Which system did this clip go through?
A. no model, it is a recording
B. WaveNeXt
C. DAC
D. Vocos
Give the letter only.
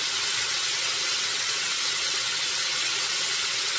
B